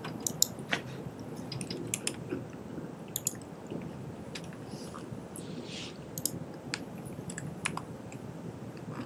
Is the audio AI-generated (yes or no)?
no